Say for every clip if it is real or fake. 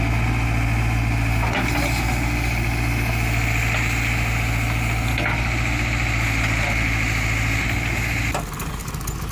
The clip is real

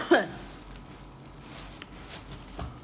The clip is real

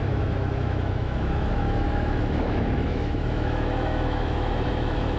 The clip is fake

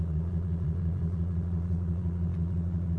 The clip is fake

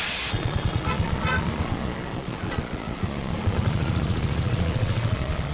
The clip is fake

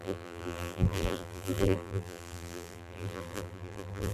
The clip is fake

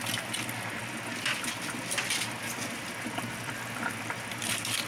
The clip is real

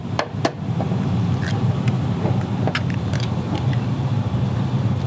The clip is real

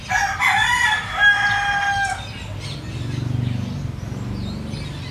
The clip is real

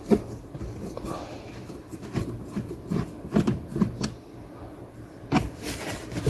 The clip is real